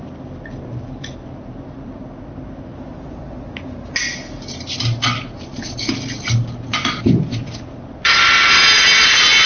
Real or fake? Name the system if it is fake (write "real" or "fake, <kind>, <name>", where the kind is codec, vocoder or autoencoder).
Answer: real